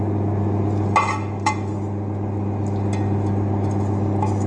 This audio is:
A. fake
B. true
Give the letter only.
B